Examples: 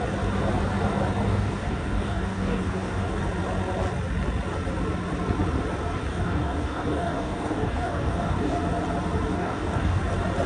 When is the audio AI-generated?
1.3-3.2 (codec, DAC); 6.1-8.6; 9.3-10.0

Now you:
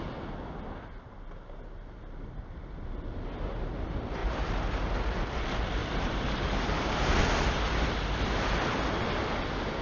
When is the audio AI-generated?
4.2-5.0 (vocoder, BigVGAN v2); 5.8-7.2

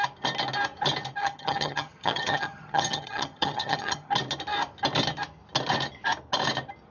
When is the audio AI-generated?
1.2-4.1 (vocoder, HiFi-GAN)

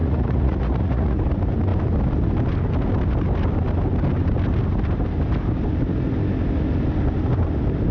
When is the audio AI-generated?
0.0-1.2 (vocoder, Vocos)

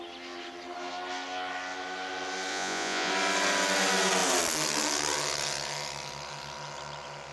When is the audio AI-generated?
2.5-3.1 (vocoder, Vocos)

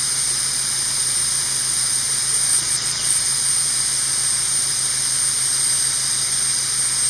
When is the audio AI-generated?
2.5-3.2 (vocoder, Vocos)

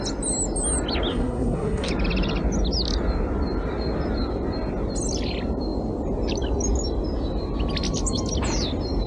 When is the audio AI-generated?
1.1-1.9 (codec, SNAC)

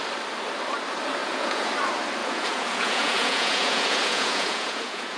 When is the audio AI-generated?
1.2-1.7 (vocoder, Vocos); 2.2-5.2